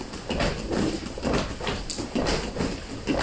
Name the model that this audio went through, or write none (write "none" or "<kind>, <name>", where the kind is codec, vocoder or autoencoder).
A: none